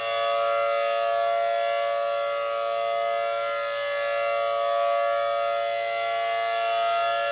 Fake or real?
real